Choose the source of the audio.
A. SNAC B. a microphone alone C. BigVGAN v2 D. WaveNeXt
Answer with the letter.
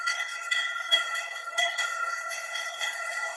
A